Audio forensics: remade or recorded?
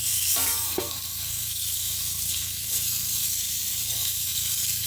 remade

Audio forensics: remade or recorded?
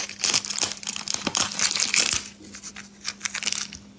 recorded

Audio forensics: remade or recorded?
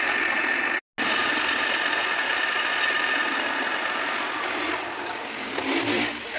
recorded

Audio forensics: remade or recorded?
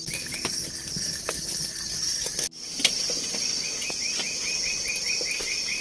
recorded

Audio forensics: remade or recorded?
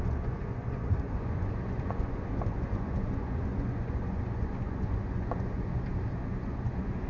remade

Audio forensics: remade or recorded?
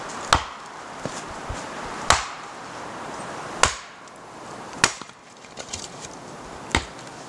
recorded